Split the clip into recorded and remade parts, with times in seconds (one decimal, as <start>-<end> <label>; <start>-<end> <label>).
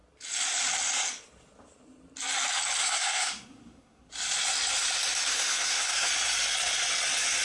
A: 0.0-2.8 recorded; 2.8-4.1 remade; 4.1-5.3 recorded; 5.3-6.1 remade; 6.1-7.4 recorded